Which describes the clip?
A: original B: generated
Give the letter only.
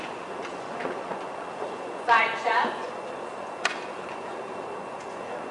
B